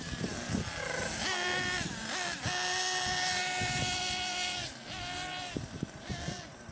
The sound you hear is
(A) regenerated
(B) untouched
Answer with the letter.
B